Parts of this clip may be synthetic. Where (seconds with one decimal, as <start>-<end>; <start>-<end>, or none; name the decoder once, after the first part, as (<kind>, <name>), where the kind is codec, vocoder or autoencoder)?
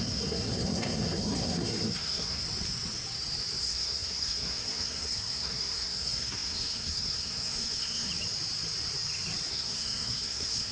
0.0-2.4 (codec, SNAC); 3.6-8.1; 9.5-10.7